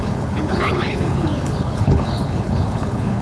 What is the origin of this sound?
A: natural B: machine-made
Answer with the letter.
B